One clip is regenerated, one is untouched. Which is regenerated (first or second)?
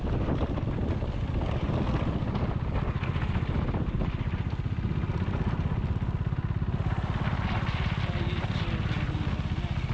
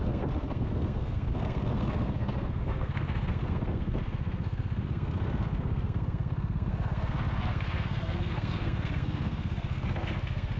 second